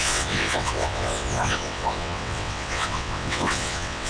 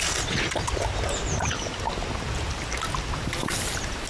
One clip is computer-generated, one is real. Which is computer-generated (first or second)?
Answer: first